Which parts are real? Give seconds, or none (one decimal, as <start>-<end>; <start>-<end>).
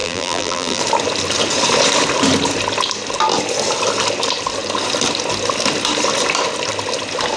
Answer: 0.8-7.4